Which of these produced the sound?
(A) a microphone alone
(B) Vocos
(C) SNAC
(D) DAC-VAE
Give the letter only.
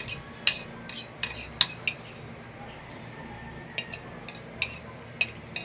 A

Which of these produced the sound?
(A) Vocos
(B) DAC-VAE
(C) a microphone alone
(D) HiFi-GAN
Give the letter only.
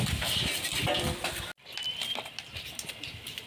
C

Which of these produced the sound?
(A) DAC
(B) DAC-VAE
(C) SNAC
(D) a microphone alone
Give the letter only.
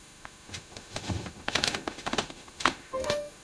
B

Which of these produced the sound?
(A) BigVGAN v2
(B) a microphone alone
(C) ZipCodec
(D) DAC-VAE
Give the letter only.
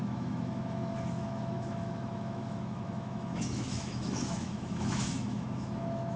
D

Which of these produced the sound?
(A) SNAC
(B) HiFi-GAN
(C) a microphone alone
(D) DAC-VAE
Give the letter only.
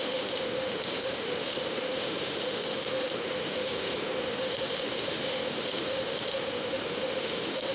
D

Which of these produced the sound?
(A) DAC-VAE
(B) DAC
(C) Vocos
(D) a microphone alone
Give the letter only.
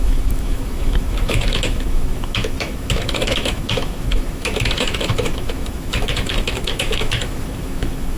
A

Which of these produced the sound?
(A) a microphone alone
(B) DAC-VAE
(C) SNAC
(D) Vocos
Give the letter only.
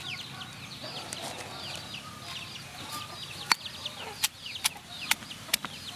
A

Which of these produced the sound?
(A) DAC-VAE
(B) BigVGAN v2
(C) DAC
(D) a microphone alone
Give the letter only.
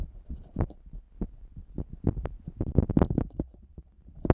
D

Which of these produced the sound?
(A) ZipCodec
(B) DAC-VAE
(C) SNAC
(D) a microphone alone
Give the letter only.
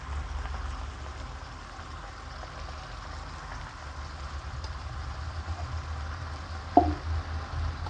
D